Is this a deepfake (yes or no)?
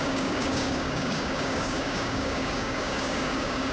yes